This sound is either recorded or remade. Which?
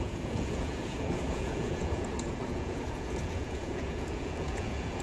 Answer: remade